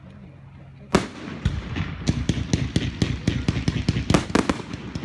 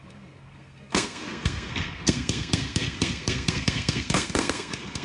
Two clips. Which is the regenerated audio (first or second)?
second